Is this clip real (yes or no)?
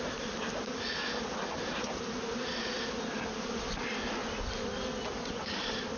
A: yes